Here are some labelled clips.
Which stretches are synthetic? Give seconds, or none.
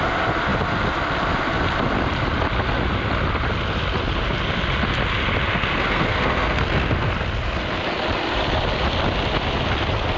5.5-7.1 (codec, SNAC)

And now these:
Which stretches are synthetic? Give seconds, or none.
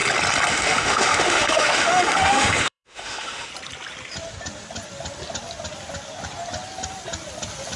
0.5-3.5 (autoencoder, DAC-VAE)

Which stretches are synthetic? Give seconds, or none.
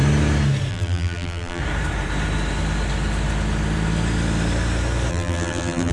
0.7-1.6 (vocoder, BigVGAN v2); 5.1-5.9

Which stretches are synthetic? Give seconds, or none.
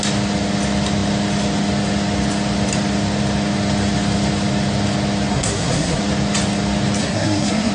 5.3-6.0 (codec, SNAC); 7.0-7.7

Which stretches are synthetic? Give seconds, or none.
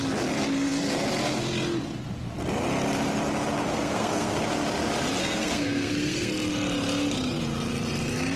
3.6-4.4 (codec, SNAC); 5.2-6.3